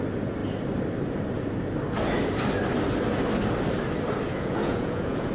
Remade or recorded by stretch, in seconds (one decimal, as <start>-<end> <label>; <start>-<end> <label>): 0.0-4.3 recorded; 4.3-5.3 remade